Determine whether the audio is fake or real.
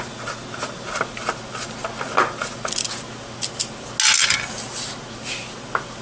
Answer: real